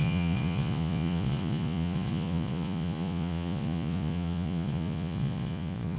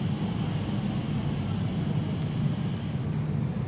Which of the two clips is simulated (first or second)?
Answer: first